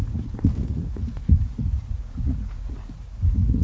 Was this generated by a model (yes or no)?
yes